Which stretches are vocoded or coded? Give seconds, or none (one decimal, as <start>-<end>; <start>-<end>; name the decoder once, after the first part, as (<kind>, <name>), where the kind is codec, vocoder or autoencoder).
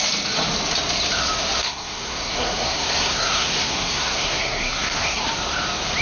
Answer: 1.6-5.2 (codec, SNAC)